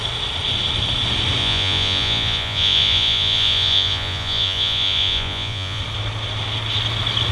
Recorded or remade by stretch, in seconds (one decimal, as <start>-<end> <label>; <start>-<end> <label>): 0.0-1.4 recorded; 1.4-5.8 remade; 5.8-7.3 recorded